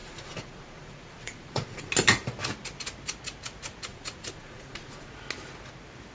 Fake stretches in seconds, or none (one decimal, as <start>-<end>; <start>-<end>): 0.0-1.9; 3.9-5.1